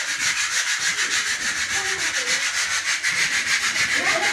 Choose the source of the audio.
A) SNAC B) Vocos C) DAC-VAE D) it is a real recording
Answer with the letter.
D